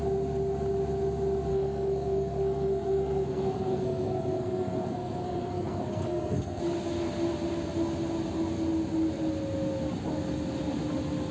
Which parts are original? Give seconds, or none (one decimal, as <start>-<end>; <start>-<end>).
0.0-1.5; 6.6-11.3